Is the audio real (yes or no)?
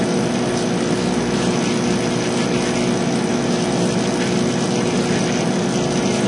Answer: yes